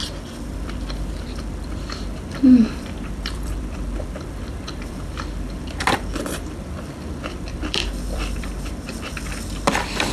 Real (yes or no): no